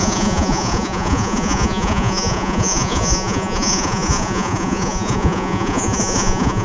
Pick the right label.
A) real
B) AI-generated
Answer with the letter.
B